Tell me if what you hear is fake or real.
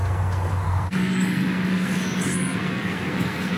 fake